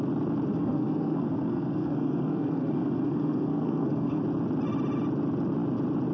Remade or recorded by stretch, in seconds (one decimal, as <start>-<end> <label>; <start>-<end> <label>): 0.0-0.5 recorded; 0.5-4.2 remade; 4.2-6.1 recorded